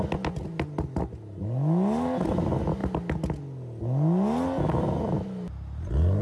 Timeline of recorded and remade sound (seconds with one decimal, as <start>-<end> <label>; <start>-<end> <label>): 0.0-6.2 recorded